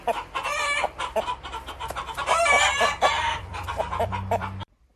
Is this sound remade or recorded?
remade